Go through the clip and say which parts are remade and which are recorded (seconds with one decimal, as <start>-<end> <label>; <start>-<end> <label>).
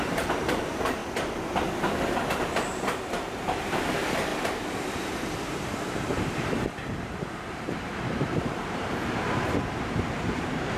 0.0-1.0 remade; 1.0-2.3 recorded; 2.3-4.3 remade; 4.3-5.5 recorded; 5.5-10.8 remade